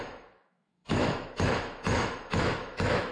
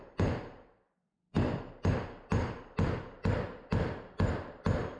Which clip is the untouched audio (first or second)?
second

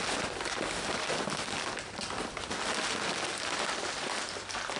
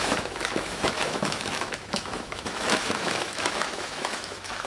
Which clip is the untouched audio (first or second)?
first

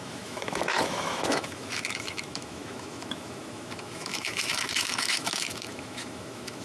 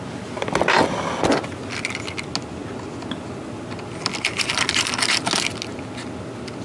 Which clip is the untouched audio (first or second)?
second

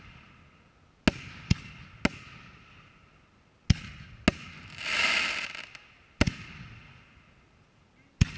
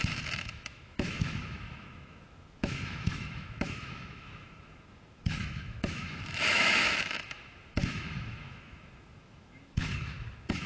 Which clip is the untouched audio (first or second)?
first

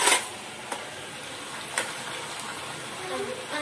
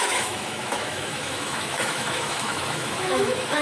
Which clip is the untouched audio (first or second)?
first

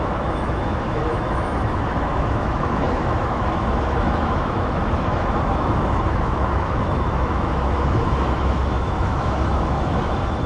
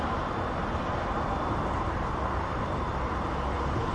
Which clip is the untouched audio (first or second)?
second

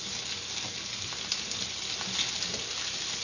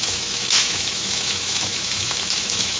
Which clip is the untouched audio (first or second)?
first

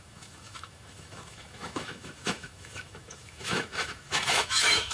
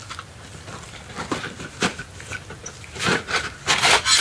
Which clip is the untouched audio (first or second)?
second